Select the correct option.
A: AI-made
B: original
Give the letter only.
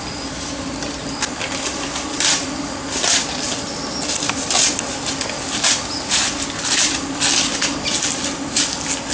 B